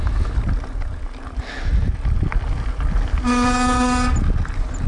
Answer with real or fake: real